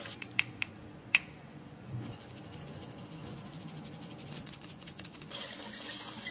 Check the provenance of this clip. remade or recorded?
remade